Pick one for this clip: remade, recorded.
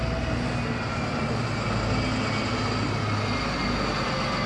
recorded